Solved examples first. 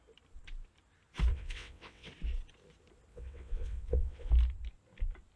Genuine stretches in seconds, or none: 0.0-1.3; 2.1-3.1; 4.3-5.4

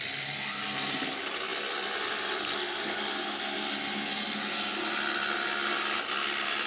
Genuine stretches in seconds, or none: 0.0-6.7